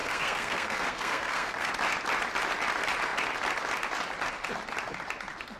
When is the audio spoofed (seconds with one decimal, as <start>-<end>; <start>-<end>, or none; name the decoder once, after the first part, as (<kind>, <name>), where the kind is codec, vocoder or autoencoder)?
0.0-1.7 (codec, SNAC)